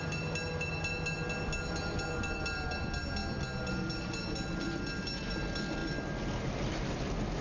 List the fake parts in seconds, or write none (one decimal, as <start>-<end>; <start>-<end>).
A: none